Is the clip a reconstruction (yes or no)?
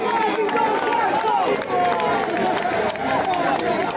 no